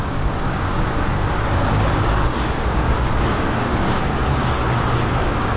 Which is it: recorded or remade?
remade